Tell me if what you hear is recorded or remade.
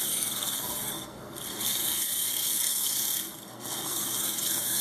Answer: remade